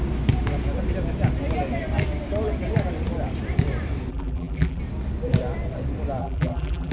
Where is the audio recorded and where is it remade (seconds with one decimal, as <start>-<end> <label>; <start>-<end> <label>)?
0.0-4.1 recorded; 4.1-4.8 remade; 4.8-6.2 recorded; 6.2-6.9 remade